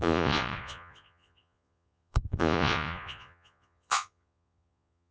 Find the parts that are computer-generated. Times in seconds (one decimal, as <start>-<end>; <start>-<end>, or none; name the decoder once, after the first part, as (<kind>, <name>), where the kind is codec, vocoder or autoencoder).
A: 0.0-5.1 (vocoder, Vocos)